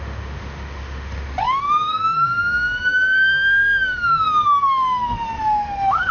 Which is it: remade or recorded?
remade